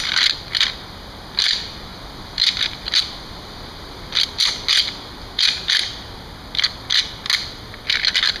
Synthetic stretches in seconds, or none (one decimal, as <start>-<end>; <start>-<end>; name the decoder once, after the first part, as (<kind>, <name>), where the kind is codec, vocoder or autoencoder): none